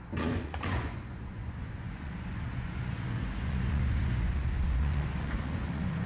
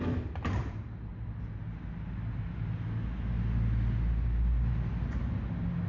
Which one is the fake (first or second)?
first